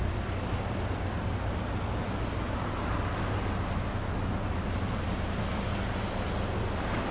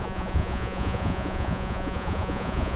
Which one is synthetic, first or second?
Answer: second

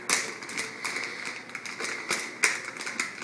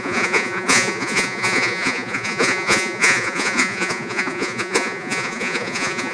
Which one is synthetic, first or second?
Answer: second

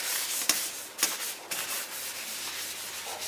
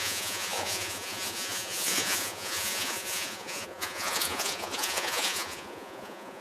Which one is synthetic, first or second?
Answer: second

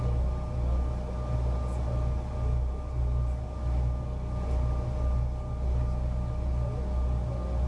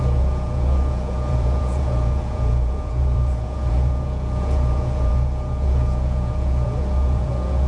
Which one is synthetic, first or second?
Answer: second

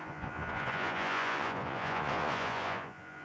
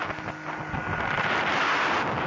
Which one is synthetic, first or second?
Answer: first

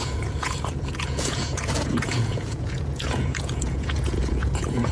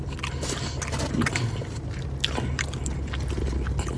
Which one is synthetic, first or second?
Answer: first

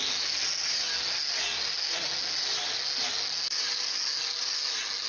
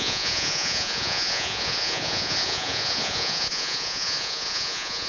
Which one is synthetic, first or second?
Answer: second